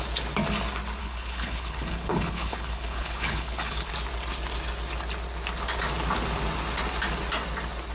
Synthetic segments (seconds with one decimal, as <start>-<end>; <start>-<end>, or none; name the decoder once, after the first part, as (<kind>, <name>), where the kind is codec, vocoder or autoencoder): 1.0-3.9 (codec, HILCodec)